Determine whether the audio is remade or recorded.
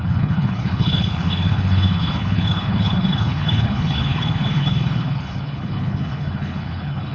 remade